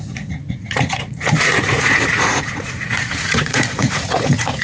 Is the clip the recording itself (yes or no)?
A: no